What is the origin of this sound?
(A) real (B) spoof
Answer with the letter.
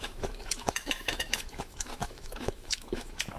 B